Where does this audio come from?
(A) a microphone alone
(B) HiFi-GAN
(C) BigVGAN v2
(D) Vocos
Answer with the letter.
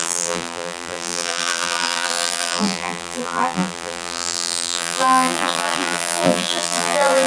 C